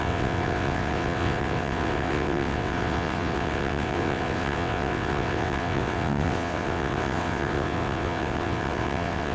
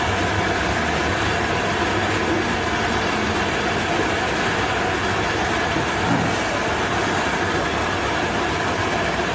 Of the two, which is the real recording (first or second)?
second